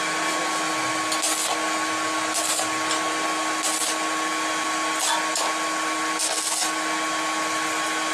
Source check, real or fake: real